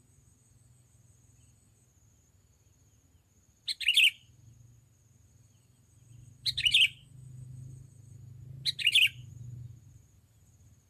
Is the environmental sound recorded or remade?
recorded